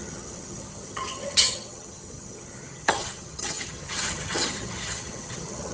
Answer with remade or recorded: remade